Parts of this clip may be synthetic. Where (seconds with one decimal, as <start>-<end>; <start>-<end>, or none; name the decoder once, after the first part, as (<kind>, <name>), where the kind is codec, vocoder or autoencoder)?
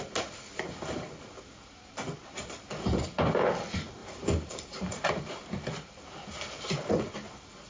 4.0-5.1 (vocoder, BigVGAN v2)